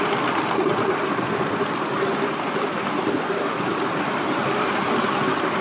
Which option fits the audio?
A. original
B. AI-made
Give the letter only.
A